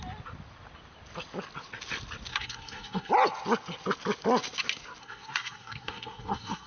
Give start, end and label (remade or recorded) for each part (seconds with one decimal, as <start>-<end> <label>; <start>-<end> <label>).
0.0-2.3 recorded; 2.3-3.1 remade; 3.1-5.0 recorded; 5.0-6.7 remade